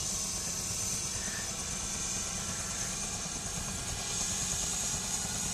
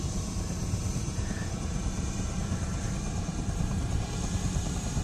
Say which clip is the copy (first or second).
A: second